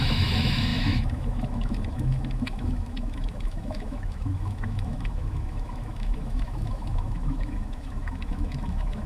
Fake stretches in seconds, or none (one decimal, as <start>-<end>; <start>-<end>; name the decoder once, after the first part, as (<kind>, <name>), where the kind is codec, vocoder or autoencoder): 0.0-9.1 (autoencoder, DAC-VAE)